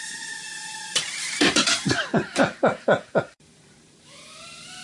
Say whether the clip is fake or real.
fake